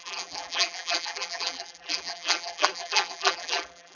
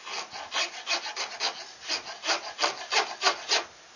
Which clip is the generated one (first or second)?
first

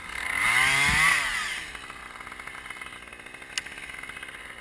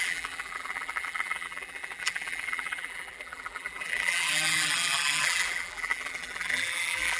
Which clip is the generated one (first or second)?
second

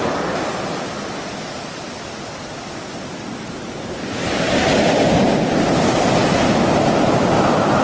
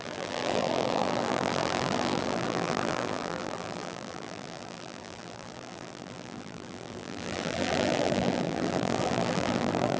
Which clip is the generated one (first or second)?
second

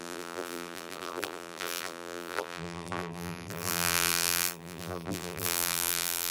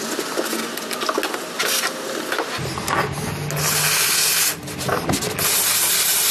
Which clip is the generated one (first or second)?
first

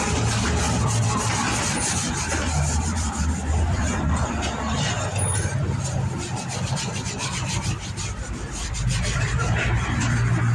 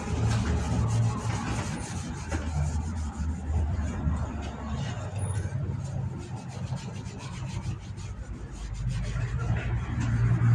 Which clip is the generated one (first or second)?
first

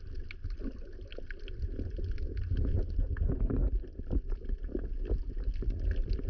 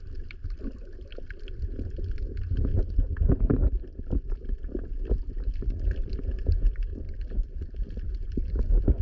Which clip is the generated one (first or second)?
second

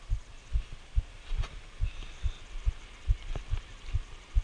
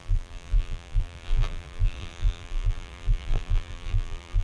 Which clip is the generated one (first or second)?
second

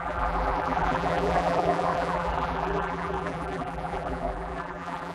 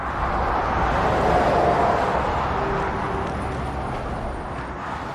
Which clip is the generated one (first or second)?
first